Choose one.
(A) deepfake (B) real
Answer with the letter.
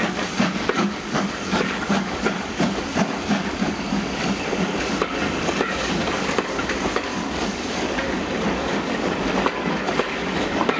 A